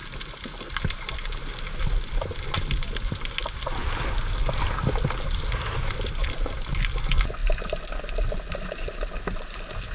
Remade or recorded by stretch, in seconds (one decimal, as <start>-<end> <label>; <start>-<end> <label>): 0.0-0.7 remade; 0.7-7.4 recorded; 7.4-8.0 remade; 8.0-9.9 recorded